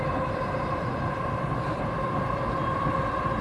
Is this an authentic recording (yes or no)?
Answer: no